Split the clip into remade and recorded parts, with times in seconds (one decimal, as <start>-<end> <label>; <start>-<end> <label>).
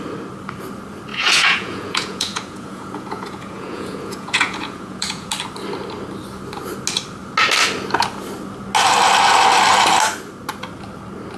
0.0-1.1 recorded; 1.1-5.3 remade; 5.3-11.4 recorded